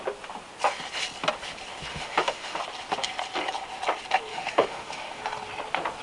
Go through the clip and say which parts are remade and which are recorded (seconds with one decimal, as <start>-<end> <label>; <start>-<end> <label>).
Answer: 0.0-1.9 recorded; 1.9-2.6 remade; 2.6-4.3 recorded; 4.3-5.2 remade; 5.2-6.0 recorded